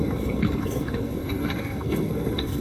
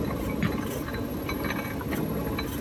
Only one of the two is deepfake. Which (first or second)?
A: first